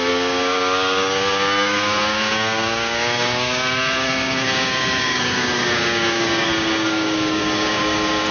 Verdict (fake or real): fake